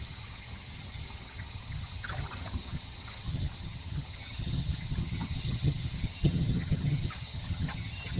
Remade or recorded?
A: remade